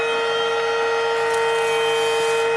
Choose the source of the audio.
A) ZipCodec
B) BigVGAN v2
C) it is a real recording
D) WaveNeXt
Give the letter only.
C